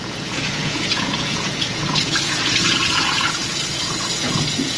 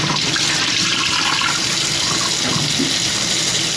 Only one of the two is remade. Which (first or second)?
first